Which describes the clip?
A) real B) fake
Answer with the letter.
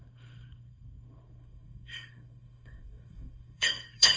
B